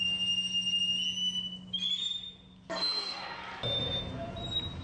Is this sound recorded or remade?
recorded